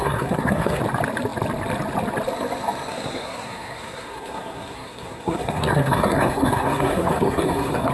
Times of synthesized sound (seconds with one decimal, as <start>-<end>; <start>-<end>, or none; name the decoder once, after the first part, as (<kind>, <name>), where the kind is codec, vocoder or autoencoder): 0.0-0.8 (codec, SNAC); 2.9-7.9